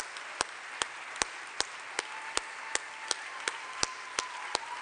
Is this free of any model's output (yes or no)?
yes